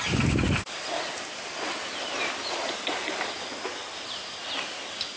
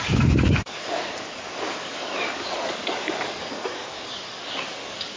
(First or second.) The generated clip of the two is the second